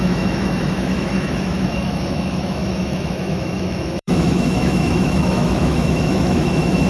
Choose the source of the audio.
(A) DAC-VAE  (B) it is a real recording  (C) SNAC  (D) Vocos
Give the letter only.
A